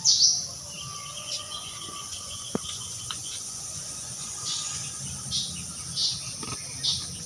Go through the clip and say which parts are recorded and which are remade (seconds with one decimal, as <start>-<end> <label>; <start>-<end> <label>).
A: 0.0-0.9 recorded; 0.9-4.9 remade; 4.9-7.3 recorded